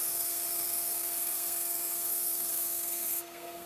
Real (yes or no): no